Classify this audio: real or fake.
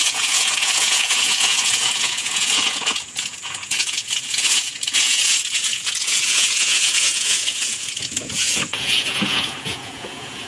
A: fake